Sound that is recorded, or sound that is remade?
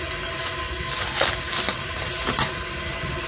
recorded